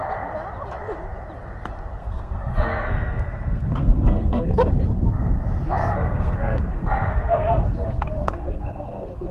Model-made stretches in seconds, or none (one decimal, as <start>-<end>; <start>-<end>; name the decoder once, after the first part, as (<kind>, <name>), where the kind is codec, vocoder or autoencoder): 2.0-4.7 (codec, SNAC); 5.8-9.3